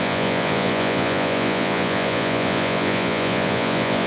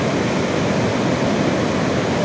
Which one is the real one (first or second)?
second